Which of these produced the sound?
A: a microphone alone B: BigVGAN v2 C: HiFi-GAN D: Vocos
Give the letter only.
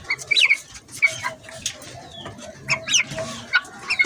A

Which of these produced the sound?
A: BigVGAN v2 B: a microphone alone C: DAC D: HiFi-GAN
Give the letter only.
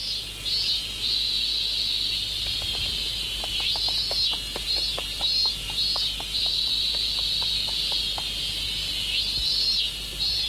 B